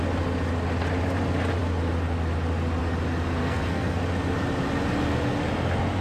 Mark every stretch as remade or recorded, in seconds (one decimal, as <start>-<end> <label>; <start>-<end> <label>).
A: 0.0-3.4 recorded; 3.4-4.0 remade; 4.0-6.0 recorded